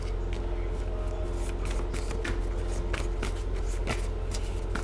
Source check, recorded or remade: recorded